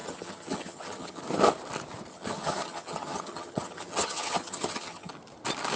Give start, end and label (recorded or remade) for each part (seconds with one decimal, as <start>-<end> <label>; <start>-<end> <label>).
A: 0.0-1.2 remade; 1.2-2.1 recorded; 2.1-5.1 remade; 5.1-5.8 recorded